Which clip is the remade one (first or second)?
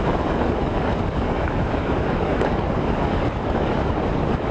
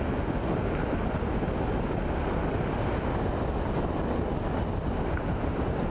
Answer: first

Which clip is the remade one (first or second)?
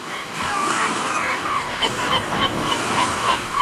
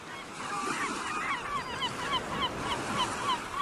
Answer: first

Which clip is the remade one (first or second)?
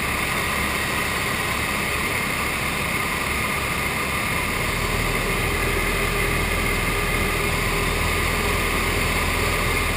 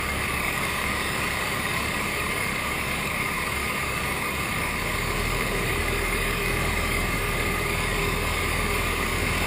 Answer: second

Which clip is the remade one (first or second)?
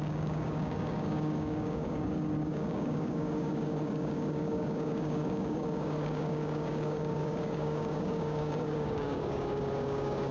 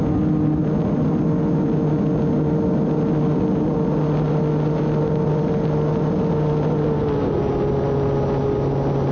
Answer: first